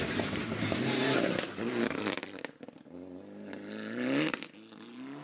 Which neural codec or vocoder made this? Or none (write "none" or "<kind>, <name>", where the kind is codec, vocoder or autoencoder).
none